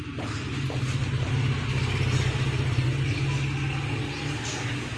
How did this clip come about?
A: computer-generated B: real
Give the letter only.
B